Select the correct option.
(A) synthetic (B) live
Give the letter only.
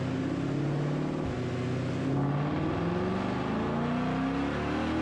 B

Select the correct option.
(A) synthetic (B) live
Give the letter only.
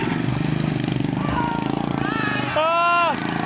B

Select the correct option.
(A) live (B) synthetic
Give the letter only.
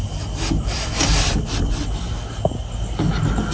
A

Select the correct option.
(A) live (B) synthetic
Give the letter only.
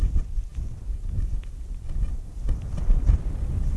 A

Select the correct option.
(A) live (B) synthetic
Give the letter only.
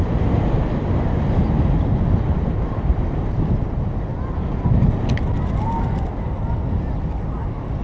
A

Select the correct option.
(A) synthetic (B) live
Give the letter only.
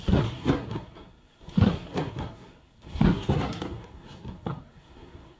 A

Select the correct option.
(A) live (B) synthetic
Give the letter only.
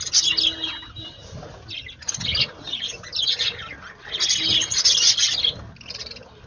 A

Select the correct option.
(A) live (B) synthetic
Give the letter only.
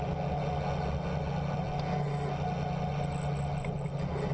A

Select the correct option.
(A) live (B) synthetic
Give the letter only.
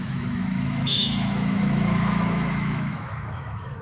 B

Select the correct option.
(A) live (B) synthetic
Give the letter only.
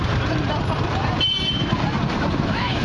B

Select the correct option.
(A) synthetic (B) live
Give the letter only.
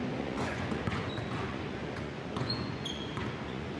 A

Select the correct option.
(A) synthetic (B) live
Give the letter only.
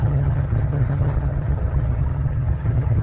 A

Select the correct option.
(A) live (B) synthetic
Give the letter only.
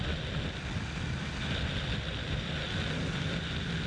A